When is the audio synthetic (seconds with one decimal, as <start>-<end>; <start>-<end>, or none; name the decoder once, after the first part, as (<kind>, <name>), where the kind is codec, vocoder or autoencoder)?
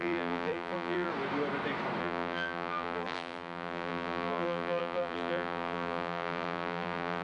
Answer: 0.0-1.1 (vocoder, BigVGAN v2); 2.0-7.2